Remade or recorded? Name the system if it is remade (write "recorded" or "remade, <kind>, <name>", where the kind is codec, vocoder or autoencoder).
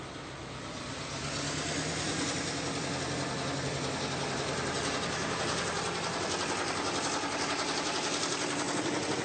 recorded